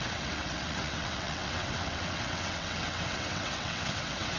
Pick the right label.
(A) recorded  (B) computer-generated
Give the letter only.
B